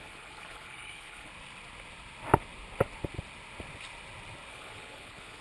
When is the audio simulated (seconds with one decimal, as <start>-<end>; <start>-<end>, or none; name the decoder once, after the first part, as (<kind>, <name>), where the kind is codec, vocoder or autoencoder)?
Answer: 0.0-1.3 (codec, HILCodec); 4.5-5.4